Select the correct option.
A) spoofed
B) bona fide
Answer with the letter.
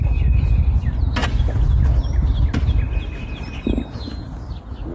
B